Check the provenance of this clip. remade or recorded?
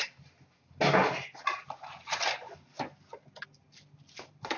recorded